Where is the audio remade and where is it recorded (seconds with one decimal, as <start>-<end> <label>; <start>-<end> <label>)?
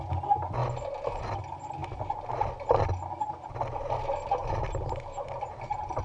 0.0-6.0 recorded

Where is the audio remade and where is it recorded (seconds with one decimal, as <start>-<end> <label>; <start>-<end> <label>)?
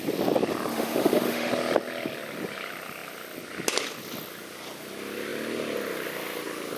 0.0-0.7 recorded; 0.7-1.5 remade; 1.5-6.8 recorded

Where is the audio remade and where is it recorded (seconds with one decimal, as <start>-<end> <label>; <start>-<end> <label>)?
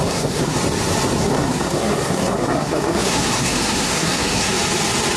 0.0-0.6 remade; 0.6-1.2 recorded; 1.2-4.5 remade; 4.5-5.2 recorded